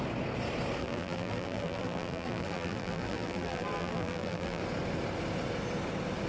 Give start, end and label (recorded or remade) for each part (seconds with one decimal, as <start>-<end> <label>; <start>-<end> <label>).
0.0-0.8 recorded; 0.8-4.6 remade; 4.6-6.3 recorded